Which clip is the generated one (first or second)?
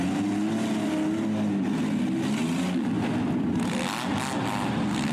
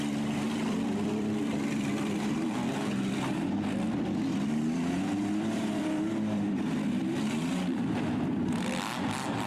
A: second